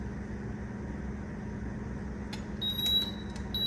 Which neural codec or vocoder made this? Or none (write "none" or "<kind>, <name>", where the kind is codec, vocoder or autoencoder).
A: none